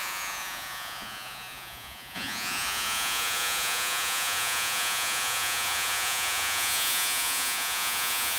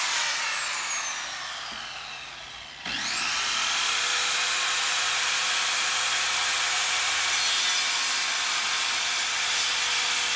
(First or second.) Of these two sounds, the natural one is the second